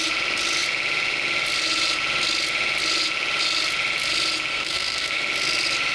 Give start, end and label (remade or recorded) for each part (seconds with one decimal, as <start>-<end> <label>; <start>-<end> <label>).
0.0-4.5 recorded; 4.5-5.2 remade; 5.2-5.9 recorded